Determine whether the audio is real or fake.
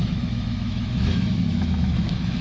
fake